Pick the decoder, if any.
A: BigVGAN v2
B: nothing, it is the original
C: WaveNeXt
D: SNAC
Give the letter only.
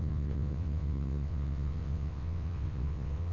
C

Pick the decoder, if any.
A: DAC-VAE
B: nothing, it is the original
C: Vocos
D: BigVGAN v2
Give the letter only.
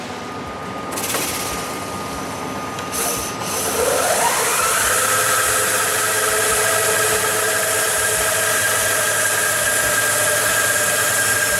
B